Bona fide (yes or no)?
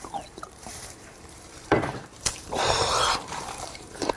no